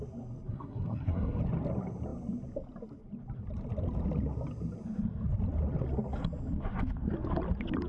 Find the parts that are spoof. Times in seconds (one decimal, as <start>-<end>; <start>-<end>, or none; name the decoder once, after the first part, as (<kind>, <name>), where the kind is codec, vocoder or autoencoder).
0.5-1.4 (codec, SNAC)